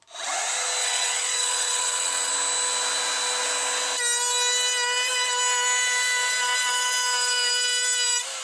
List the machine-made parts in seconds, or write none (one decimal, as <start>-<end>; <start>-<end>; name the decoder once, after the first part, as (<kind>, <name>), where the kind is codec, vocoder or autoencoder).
0.8-2.3 (vocoder, WaveNeXt)